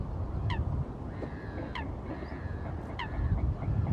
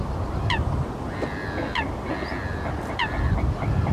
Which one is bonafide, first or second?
second